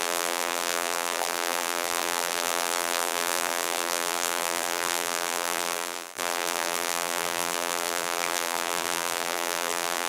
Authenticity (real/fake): fake